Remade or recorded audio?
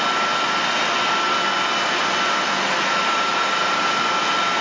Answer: recorded